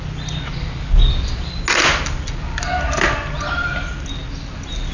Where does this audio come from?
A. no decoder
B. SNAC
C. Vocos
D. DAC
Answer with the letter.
A